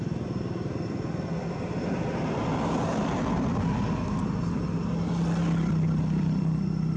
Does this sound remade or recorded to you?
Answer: recorded